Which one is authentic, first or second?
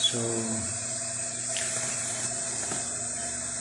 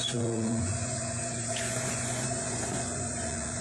first